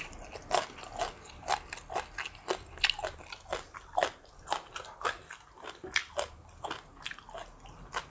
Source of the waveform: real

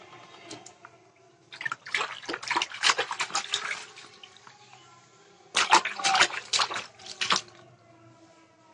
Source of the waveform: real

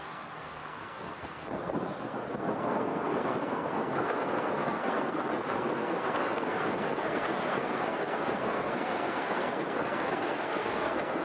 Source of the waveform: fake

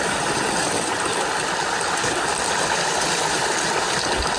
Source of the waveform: real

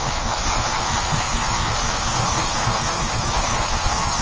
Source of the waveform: fake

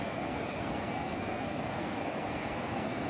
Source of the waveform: fake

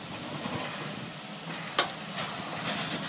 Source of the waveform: real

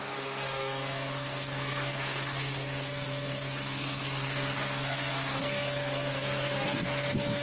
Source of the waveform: fake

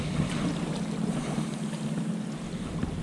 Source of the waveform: real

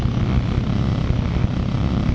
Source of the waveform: real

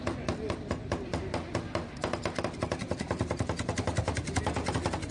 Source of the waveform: real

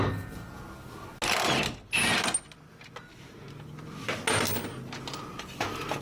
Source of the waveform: real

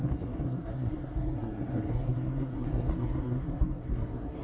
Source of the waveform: fake